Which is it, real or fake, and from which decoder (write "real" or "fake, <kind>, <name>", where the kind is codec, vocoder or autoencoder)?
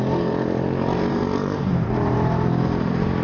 fake, vocoder, BigVGAN v2